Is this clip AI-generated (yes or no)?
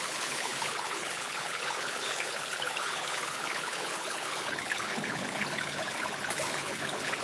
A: yes